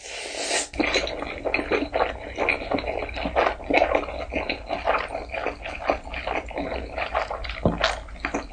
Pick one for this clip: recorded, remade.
recorded